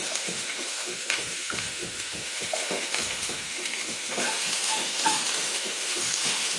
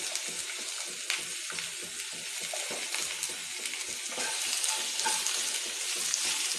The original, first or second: second